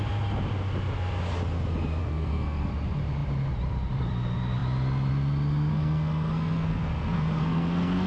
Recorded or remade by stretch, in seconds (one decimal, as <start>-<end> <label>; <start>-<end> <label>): 0.0-2.0 recorded; 2.0-2.7 remade; 2.7-5.7 recorded; 5.7-8.1 remade